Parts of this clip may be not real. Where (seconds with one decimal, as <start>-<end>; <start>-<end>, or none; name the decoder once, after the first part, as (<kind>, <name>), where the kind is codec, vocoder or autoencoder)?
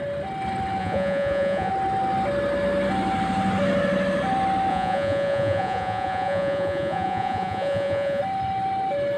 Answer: 0.8-1.7 (vocoder, Vocos); 4.7-8.2